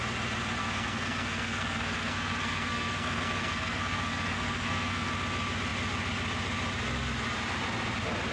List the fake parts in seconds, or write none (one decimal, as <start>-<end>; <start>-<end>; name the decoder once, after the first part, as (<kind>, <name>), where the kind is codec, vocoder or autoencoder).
0.6-5.1 (codec, SNAC)